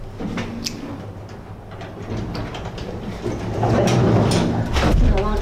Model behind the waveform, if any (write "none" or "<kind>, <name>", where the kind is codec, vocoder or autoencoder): none